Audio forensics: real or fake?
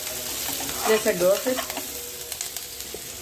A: real